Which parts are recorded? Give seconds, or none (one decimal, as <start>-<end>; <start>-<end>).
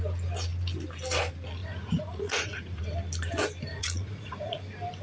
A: 0.0-1.6; 2.8-3.7; 4.6-5.0